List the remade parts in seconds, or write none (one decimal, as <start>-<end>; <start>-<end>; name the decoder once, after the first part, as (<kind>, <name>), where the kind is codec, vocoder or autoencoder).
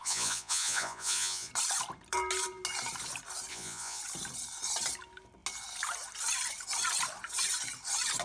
0.0-1.5 (vocoder, Vocos); 3.5-4.0